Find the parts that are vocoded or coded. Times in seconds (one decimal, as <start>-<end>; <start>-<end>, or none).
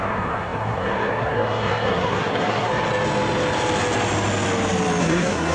0.0-2.7; 5.0-5.5